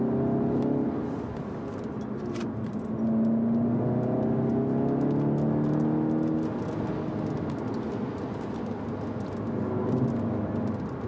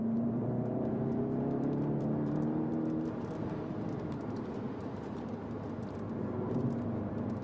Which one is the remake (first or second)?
second